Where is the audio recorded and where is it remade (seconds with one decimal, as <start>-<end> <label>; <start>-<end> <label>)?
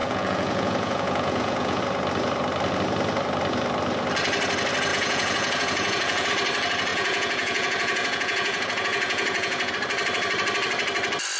0.0-1.8 remade; 1.8-4.9 recorded; 4.9-6.3 remade; 6.3-6.9 recorded; 6.9-9.7 remade; 9.7-11.4 recorded